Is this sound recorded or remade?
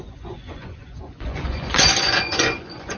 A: remade